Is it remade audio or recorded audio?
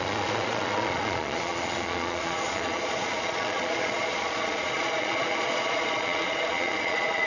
remade